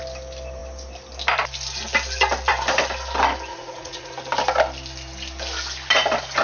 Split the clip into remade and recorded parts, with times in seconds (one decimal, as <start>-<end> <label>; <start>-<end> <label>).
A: 0.0-3.5 recorded; 3.5-4.1 remade; 4.1-6.4 recorded